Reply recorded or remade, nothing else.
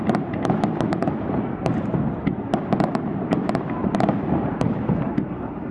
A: remade